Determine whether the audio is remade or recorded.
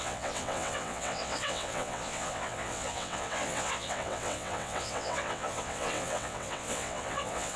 remade